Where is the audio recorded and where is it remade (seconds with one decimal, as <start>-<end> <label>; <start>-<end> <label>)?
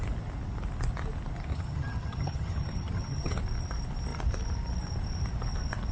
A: 0.0-1.5 recorded; 1.5-3.4 remade; 3.4-5.9 recorded